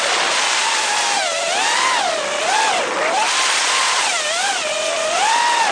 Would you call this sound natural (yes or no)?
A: yes